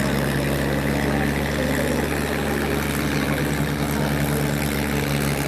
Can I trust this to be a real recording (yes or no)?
yes